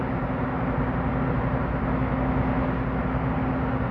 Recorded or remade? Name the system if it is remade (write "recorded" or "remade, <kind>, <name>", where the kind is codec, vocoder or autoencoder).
recorded